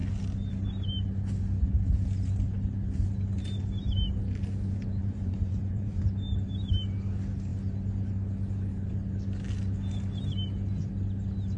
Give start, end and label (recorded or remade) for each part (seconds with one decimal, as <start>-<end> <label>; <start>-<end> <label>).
0.0-5.0 recorded; 5.0-6.0 remade; 6.0-11.6 recorded